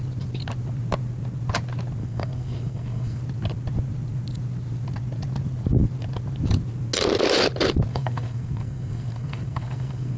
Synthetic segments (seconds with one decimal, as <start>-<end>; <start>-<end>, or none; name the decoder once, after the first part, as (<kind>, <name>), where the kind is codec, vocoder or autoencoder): 2.0-3.2 (codec, SNAC); 7.9-10.2

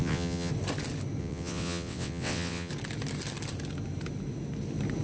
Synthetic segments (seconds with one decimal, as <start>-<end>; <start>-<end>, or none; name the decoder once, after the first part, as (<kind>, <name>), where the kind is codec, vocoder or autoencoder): 0.0-0.5 (vocoder, WaveNeXt); 1.2-2.7